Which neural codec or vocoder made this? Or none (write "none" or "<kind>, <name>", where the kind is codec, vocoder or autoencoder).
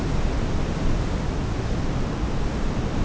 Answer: none